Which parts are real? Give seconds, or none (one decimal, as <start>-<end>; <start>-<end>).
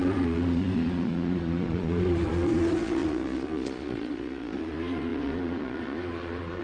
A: none